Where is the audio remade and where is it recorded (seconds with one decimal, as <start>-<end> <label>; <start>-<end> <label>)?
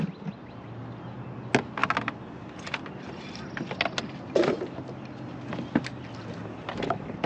0.0-7.3 recorded